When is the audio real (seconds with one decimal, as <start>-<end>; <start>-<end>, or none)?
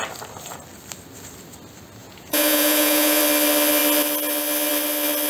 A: 0.0-2.0; 3.2-5.3